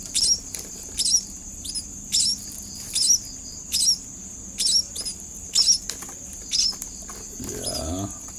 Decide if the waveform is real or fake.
real